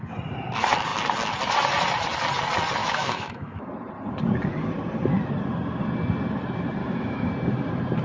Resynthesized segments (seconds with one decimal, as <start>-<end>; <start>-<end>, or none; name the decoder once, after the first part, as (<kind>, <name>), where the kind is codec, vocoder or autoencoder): 2.8-3.7 (autoencoder, DAC-VAE); 6.8-7.3